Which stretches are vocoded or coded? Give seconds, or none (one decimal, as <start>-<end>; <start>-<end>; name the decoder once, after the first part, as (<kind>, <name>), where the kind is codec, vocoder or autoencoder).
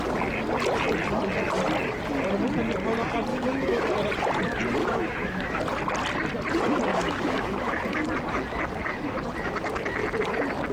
3.3-3.8 (autoencoder, DAC-VAE); 4.8-5.6; 6.9-7.7